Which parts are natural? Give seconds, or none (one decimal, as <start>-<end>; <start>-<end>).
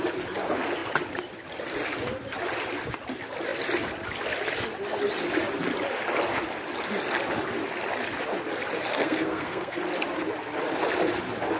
0.0-8.9; 9.8-11.6